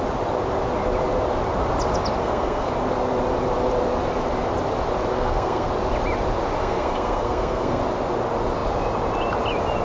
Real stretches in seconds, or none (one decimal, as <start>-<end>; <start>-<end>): 0.0-2.2; 2.7-5.1; 5.7-6.6; 7.8-9.8

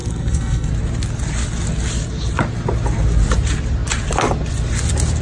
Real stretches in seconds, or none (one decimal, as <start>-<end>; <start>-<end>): 0.7-5.2